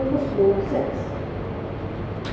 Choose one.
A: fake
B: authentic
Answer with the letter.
B